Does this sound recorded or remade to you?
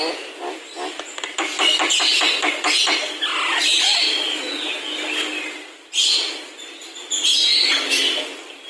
recorded